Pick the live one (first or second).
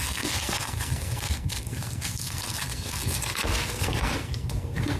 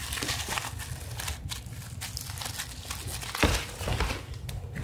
second